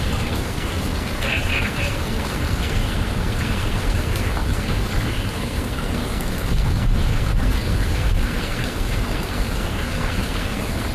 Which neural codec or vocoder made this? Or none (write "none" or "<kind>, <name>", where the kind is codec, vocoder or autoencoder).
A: codec, SNAC